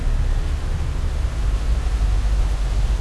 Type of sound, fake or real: real